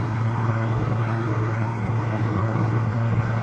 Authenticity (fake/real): fake